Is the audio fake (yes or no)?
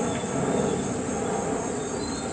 no